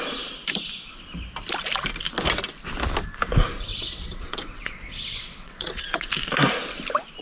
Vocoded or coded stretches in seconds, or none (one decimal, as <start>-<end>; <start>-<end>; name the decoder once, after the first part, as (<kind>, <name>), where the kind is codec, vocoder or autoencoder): 3.7-6.0 (vocoder, WaveNeXt)